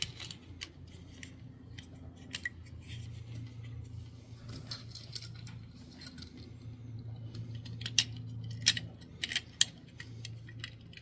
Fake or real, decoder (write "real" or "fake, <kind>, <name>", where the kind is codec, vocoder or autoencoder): real